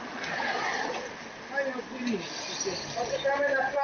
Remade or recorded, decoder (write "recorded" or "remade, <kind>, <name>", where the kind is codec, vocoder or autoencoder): recorded